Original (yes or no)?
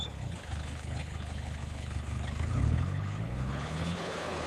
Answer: no